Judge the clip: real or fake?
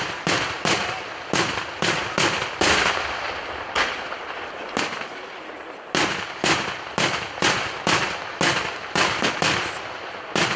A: real